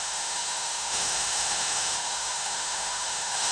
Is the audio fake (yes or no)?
yes